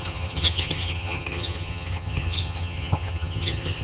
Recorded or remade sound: remade